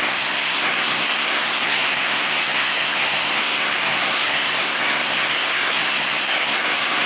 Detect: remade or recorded remade